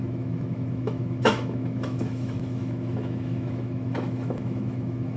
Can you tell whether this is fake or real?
fake